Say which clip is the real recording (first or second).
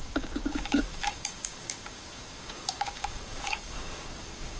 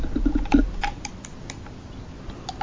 second